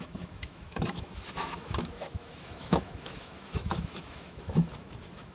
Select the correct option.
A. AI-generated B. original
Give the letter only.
A